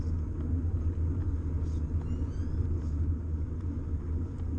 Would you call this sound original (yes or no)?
yes